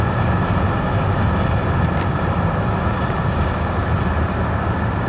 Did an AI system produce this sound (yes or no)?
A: no